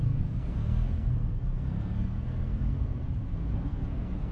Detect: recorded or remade remade